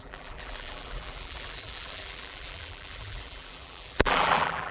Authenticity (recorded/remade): remade